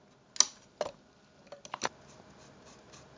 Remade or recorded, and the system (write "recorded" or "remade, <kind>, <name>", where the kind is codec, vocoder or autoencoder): recorded